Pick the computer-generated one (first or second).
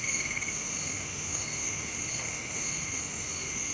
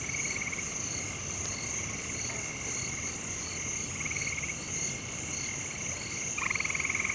first